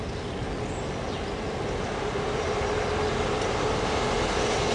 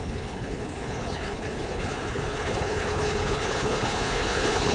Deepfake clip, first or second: second